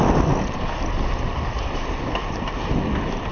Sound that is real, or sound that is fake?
real